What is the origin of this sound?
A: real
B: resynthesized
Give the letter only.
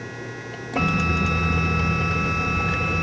A